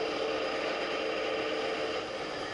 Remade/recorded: recorded